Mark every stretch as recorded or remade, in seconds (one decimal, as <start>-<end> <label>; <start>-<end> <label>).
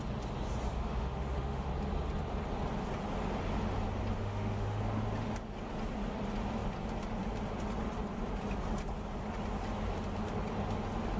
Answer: 0.0-0.7 recorded; 0.7-1.7 remade; 1.7-4.2 recorded; 4.2-4.8 remade; 4.8-11.2 recorded